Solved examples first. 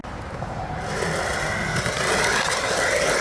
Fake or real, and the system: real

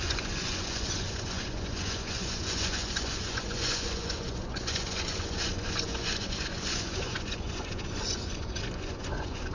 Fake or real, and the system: fake, vocoder, Vocos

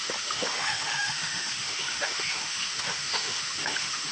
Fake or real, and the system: fake, autoencoder, DAC-VAE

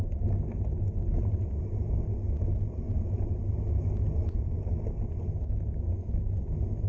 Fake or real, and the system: real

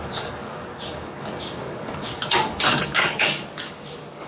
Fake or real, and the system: fake, codec, DAC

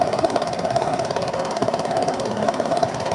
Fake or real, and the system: fake, codec, SNAC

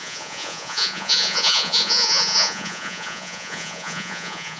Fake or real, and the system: fake, vocoder, Vocos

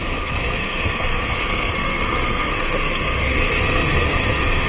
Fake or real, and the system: fake, codec, SNAC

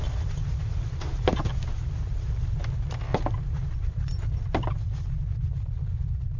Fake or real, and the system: real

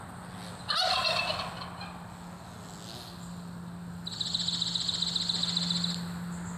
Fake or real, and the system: real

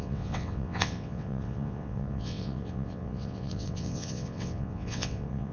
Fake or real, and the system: fake, vocoder, WaveNeXt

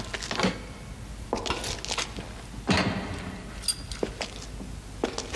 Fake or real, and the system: real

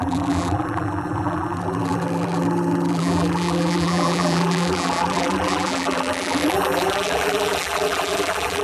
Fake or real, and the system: fake, vocoder, BigVGAN v2